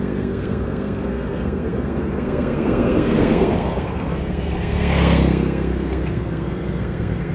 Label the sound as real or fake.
fake